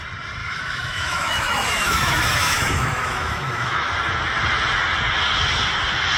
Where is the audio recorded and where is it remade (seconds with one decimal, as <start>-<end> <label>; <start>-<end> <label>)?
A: 0.0-0.4 recorded; 0.4-3.9 remade; 3.9-6.2 recorded